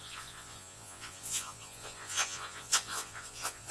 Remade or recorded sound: remade